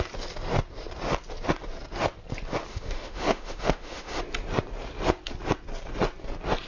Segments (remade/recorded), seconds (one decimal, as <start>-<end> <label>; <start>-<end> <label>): 0.0-2.7 recorded; 2.7-4.2 remade; 4.2-6.7 recorded